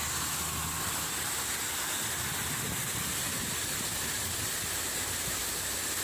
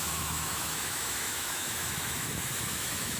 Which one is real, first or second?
first